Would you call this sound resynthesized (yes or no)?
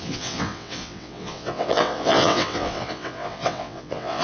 yes